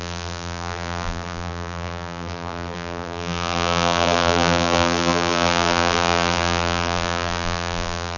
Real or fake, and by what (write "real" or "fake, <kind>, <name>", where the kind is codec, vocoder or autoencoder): fake, vocoder, BigVGAN v2